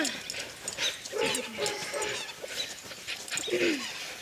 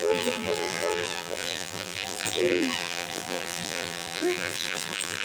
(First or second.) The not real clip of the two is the second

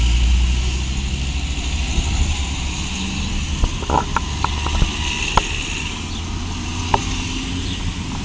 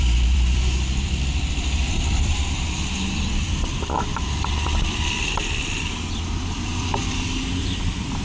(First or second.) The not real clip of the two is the second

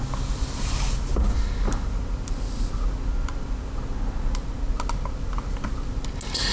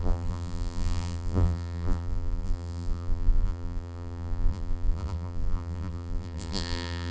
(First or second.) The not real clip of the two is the second